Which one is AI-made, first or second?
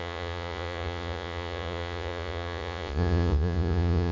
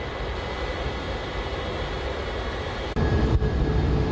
first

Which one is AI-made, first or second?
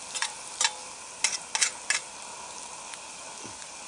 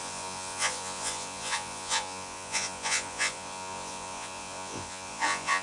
second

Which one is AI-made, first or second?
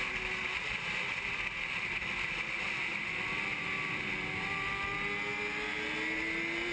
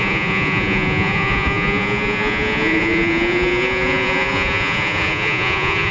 second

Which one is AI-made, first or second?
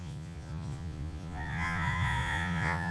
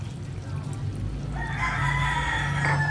first